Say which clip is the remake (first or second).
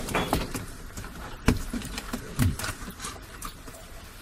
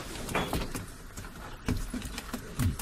first